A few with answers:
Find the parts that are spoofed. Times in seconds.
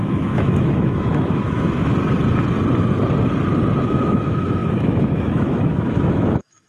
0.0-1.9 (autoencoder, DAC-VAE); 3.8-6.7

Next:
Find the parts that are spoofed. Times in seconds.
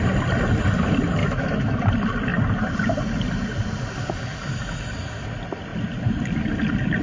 1.2-1.8 (autoencoder, DAC-VAE)